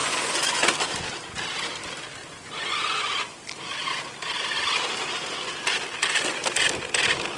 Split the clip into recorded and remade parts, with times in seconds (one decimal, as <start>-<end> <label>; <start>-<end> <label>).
0.0-0.7 remade; 0.7-2.2 recorded; 2.2-3.4 remade; 3.4-7.4 recorded